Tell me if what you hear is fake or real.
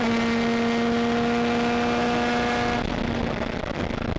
real